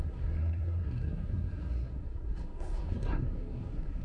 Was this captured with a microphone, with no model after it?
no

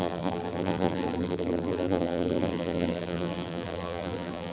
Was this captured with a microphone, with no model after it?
no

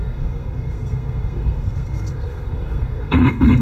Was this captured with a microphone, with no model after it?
no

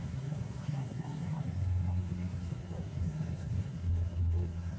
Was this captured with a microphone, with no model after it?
no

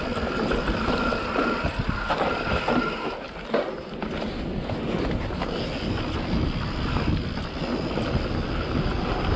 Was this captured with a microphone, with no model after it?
yes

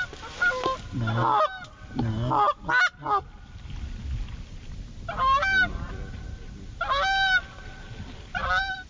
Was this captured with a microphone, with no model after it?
yes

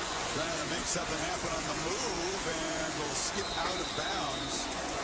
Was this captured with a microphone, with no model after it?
no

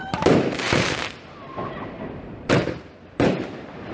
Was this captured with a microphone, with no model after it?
no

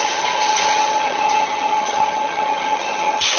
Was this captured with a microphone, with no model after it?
no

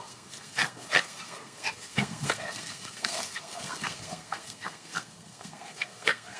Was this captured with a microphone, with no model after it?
no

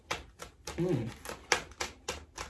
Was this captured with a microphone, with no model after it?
yes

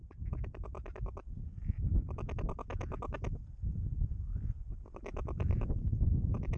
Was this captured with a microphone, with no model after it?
yes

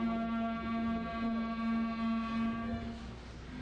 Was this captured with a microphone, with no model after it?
yes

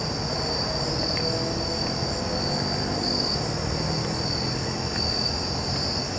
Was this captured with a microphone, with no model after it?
yes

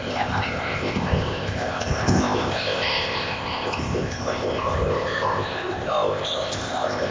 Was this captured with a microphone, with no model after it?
no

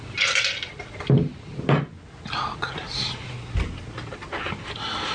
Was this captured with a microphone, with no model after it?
yes